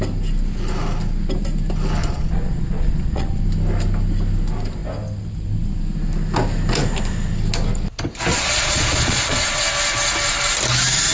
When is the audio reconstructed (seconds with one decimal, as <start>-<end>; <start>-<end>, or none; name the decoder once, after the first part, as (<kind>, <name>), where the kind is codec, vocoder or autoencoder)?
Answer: 2.0-3.4 (vocoder, Vocos); 8.3-9.6